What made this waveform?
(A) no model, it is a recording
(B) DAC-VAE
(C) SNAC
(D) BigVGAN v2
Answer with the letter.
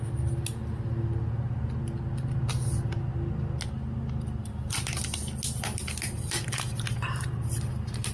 A